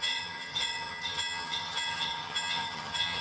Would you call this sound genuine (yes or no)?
no